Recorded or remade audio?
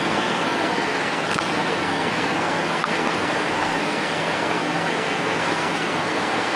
remade